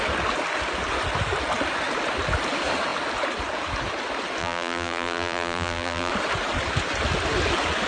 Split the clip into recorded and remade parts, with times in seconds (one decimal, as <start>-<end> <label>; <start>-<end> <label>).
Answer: 0.0-4.4 recorded; 4.4-6.1 remade; 6.1-7.9 recorded